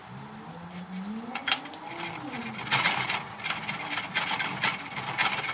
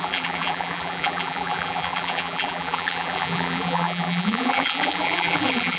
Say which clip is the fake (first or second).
second